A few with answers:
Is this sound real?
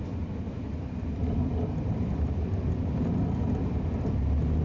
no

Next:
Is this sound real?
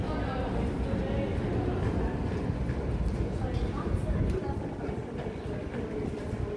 yes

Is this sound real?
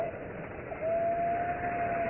yes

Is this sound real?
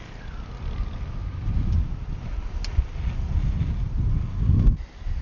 yes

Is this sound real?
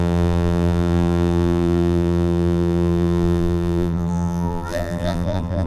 no